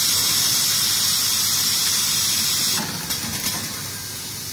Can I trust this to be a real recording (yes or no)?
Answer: no